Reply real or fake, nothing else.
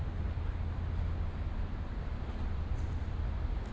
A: real